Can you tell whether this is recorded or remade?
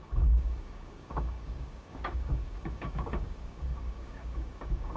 remade